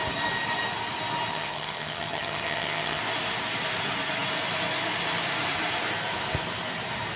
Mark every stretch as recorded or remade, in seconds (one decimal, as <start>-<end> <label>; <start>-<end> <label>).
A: 0.0-1.3 recorded; 1.3-3.0 remade; 3.0-7.2 recorded